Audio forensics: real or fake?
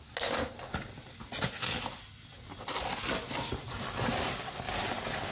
real